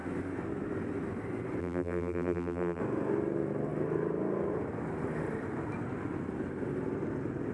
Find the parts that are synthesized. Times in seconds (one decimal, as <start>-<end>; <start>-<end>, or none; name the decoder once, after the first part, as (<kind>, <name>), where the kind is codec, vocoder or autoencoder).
1.6-2.8 (vocoder, BigVGAN v2)